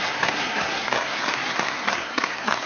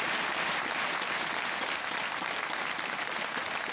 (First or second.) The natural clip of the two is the second